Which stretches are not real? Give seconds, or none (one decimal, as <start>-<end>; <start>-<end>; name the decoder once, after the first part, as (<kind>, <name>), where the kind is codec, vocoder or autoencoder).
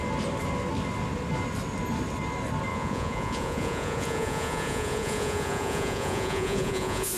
2.7-7.2 (vocoder, Vocos)